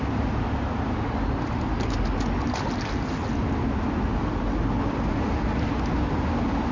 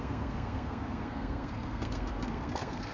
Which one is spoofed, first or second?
second